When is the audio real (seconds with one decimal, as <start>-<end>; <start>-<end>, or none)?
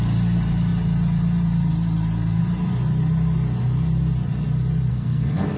0.0-4.9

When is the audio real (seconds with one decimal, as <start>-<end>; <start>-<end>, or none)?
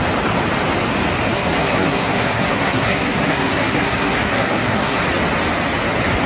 0.0-1.3; 5.0-6.3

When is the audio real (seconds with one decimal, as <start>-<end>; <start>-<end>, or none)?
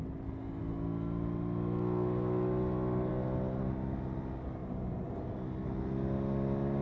0.0-6.8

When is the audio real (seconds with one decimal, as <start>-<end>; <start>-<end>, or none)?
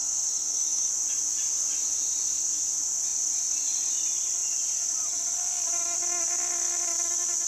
0.9-7.5